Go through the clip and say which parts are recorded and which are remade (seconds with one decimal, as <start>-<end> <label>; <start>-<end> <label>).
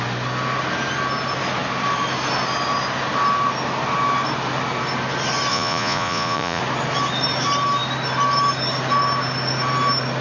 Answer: 0.0-5.5 recorded; 5.5-6.6 remade; 6.6-10.2 recorded